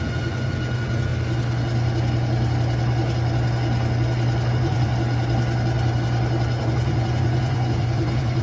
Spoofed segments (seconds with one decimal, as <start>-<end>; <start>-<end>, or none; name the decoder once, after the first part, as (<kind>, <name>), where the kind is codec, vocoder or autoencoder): 0.0-1.1 (vocoder, Vocos); 4.5-4.9; 6.6-8.4